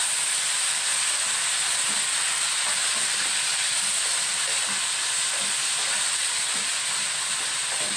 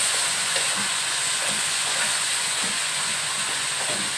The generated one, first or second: second